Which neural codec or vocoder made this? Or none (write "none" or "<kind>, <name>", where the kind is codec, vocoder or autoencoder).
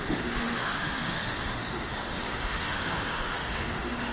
autoencoder, DAC-VAE